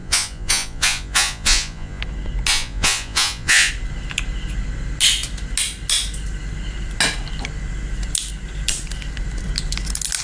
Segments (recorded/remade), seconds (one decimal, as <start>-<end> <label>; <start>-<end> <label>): 0.0-2.0 remade; 2.0-2.5 recorded; 2.5-3.7 remade; 3.7-10.2 recorded